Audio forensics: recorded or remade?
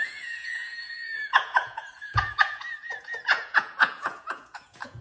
remade